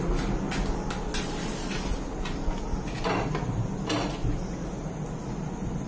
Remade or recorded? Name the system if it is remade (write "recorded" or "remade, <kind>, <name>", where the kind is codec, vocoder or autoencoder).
recorded